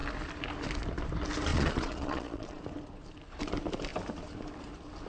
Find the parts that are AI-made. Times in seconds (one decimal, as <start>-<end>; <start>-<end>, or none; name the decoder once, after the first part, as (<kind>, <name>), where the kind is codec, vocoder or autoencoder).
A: 1.5-2.6 (vocoder, Vocos)